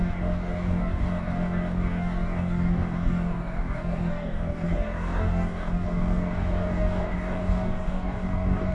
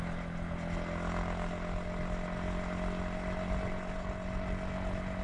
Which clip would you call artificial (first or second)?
first